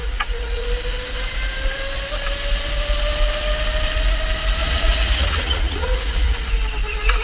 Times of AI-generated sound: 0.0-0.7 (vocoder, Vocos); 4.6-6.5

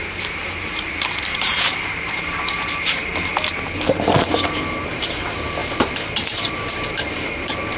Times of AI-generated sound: 0.0-3.1 (vocoder, BigVGAN v2); 4.1-7.8

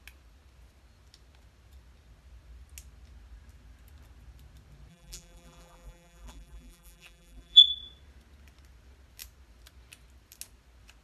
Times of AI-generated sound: 4.9-7.6 (vocoder, BigVGAN v2)

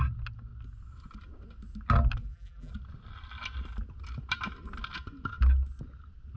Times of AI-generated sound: 2.2-2.7 (vocoder, BigVGAN v2)

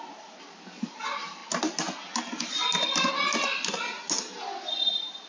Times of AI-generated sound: none